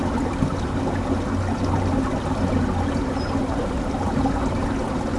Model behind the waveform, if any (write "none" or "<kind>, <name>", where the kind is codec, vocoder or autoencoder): none